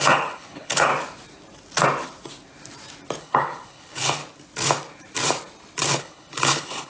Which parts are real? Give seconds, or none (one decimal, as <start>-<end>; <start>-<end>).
0.9-3.2; 4.2-6.0